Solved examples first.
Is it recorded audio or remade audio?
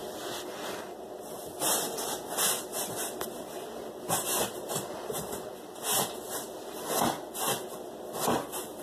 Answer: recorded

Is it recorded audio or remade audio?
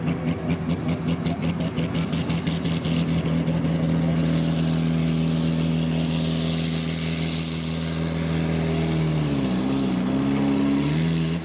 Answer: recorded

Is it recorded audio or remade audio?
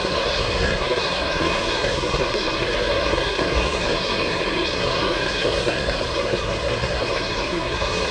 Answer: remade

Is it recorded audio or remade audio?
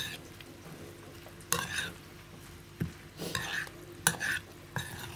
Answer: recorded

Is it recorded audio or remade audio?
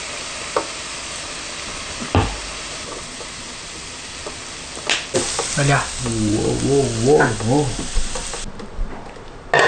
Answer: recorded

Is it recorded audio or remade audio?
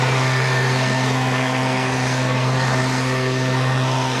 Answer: remade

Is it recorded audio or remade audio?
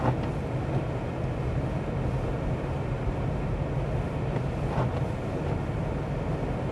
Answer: recorded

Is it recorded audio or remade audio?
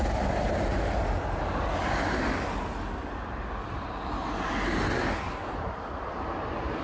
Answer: recorded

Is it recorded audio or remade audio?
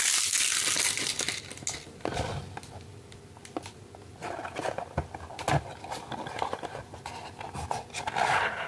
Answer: recorded